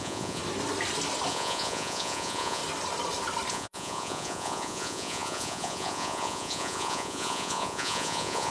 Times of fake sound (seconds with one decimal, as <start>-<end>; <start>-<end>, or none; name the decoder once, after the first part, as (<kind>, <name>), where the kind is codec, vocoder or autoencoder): 0.0-0.4 (vocoder, Vocos); 1.3-2.6; 3.5-8.5